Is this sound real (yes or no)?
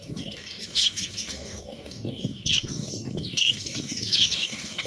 no